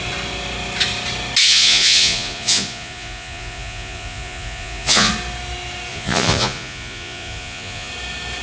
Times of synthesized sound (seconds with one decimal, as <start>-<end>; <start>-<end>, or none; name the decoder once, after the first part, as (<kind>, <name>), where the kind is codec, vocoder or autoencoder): 1.4-5.1 (vocoder, Vocos); 5.9-7.9

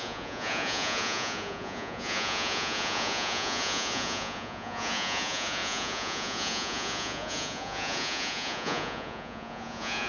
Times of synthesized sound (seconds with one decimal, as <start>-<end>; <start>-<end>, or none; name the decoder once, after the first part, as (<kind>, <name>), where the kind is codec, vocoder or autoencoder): 0.0-10.1 (vocoder, Vocos)

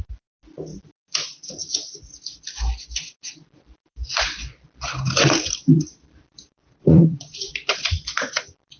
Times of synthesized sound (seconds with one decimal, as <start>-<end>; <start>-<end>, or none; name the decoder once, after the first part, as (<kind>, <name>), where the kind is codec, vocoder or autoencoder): 6.6-7.5 (vocoder, Vocos)

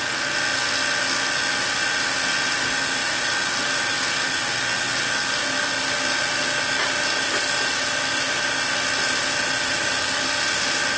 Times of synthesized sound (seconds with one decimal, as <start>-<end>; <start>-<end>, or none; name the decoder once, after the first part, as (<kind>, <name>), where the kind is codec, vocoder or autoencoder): none

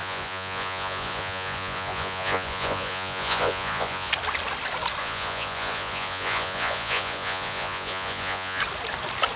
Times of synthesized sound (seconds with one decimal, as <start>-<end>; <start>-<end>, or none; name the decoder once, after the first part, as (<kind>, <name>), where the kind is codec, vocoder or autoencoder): 0.0-4.1 (vocoder, Vocos); 5.0-8.6

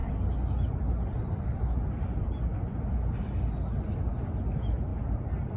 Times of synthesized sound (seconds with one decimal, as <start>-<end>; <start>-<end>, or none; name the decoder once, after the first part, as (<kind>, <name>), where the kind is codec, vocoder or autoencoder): none